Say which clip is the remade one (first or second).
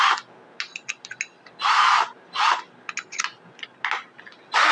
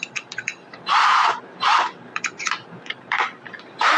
second